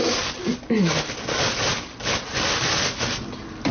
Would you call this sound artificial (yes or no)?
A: no